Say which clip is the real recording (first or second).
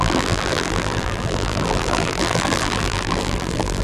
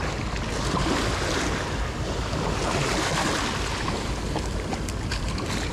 second